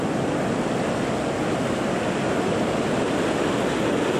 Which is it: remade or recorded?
recorded